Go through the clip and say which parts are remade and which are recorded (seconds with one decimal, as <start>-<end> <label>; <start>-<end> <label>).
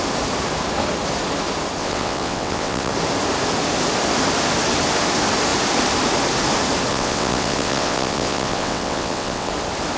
0.0-1.8 recorded; 1.8-2.9 remade; 2.9-6.9 recorded; 6.9-9.5 remade; 9.5-10.0 recorded